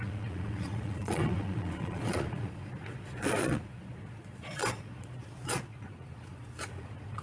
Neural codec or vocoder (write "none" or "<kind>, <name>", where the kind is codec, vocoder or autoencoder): vocoder, Vocos